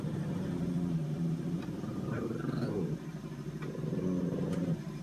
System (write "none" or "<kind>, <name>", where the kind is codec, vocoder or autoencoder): vocoder, BigVGAN v2